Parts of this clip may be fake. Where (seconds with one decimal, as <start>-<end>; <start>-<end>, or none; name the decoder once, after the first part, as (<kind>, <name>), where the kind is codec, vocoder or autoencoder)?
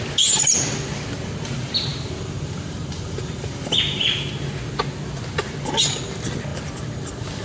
1.9-3.6 (vocoder, BigVGAN v2)